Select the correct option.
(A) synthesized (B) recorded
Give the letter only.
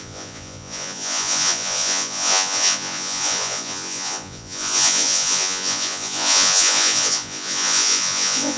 A